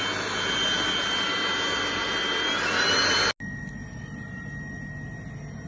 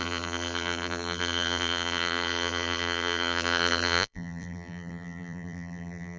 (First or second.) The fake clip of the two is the second